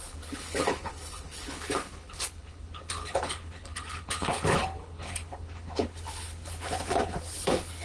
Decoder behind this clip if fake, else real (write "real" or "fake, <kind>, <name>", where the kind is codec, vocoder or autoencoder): fake, codec, HILCodec